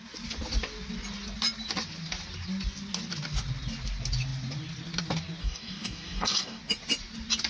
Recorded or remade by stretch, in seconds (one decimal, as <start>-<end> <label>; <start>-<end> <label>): 0.0-5.4 recorded; 5.4-6.6 remade; 6.6-7.5 recorded